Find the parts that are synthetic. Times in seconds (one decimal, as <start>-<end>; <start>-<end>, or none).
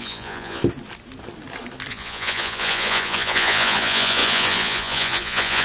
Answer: 0.0-0.6; 1.9-5.6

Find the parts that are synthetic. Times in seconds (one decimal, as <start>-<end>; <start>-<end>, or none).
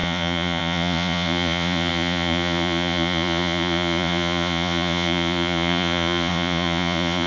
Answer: 0.0-7.3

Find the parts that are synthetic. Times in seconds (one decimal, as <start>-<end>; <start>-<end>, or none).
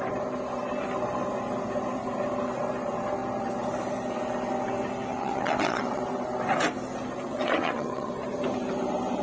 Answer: 5.1-6.0; 7.3-8.1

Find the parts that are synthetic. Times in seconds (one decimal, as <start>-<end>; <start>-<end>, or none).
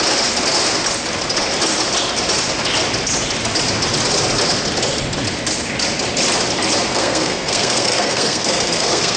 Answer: 6.9-9.2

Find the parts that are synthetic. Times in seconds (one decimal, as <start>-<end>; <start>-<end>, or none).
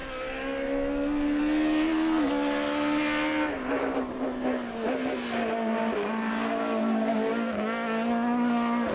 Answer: none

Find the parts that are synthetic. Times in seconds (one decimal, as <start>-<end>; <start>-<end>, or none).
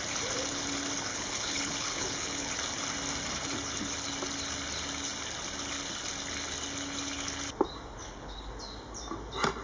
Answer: 1.1-2.5; 7.9-8.5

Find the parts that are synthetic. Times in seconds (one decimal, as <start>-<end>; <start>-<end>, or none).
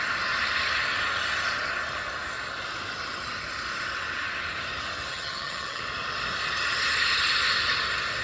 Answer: 5.1-5.8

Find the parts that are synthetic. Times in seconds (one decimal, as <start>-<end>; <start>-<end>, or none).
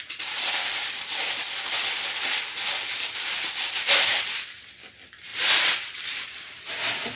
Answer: 5.3-6.7